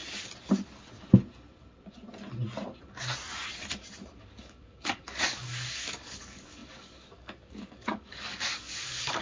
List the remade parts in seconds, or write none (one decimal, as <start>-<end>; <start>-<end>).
4.2-9.2